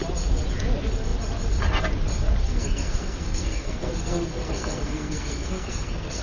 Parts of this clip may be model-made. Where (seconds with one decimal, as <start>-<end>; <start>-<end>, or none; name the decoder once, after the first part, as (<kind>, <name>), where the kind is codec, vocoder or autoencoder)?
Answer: 2.4-6.2 (codec, SNAC)